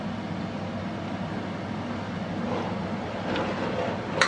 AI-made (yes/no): no